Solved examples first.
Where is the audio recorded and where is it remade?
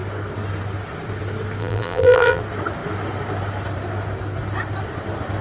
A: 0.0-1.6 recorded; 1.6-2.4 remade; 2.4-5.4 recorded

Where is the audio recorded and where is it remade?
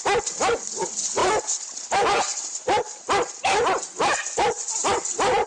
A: 0.0-5.5 recorded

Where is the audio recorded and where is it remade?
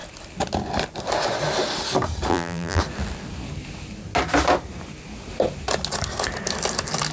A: 0.0-2.3 recorded; 2.3-2.8 remade; 2.8-7.1 recorded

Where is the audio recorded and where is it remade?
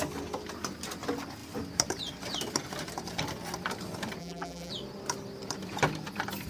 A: 0.0-4.2 recorded; 4.2-4.7 remade; 4.7-6.5 recorded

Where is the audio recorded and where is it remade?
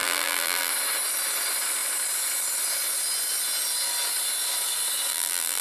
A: 0.0-0.7 remade; 0.7-5.1 recorded; 5.1-5.6 remade